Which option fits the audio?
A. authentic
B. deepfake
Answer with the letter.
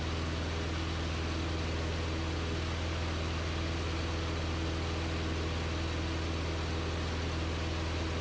A